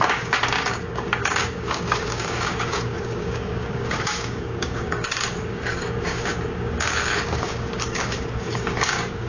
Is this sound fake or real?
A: fake